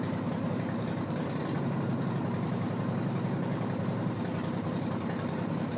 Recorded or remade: remade